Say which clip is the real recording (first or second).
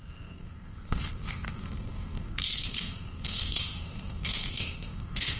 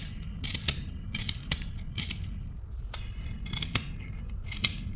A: second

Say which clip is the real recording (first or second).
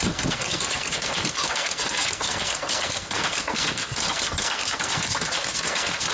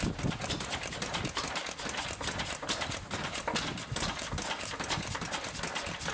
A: second